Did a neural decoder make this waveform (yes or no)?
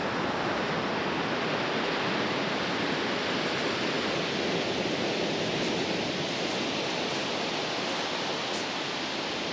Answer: no